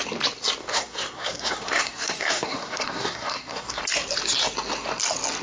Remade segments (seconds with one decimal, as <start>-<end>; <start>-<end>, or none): 0.6-3.8